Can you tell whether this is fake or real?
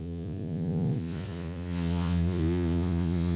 fake